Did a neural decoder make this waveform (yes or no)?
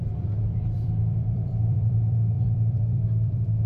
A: yes